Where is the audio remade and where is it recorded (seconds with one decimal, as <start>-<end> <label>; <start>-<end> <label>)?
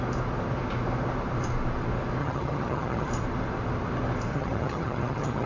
0.0-2.2 recorded; 2.2-3.1 remade; 3.1-4.3 recorded; 4.3-5.5 remade